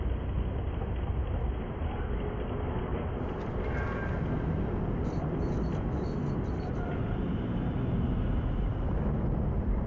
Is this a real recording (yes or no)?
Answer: yes